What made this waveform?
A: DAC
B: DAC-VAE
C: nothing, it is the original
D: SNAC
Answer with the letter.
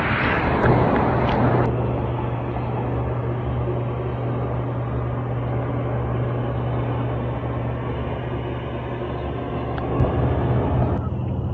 C